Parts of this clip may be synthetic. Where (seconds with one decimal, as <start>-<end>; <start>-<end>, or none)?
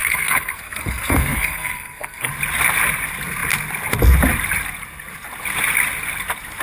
0.0-2.3